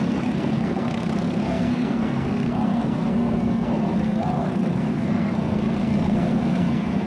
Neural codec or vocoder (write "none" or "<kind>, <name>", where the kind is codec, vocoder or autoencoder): codec, SNAC